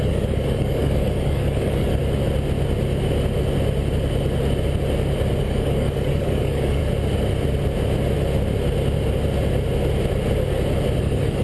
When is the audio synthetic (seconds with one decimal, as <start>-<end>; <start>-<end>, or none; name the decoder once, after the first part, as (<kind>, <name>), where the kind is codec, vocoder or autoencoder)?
0.0-2.0 (codec, DAC); 5.4-6.8; 11.0-11.4